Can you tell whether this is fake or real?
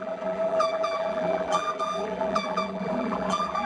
fake